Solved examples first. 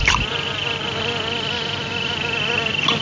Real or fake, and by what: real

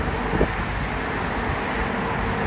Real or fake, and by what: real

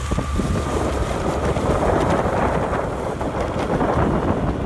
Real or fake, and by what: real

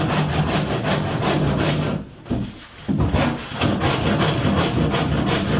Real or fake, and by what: real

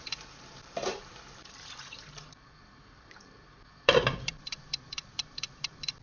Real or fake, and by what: fake, vocoder, BigVGAN v2